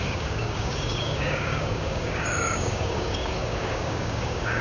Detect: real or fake fake